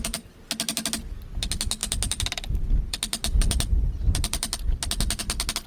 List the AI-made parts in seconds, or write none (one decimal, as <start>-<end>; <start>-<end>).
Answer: 1.8-5.2